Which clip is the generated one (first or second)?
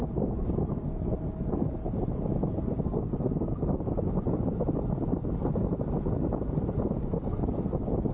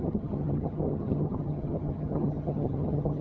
second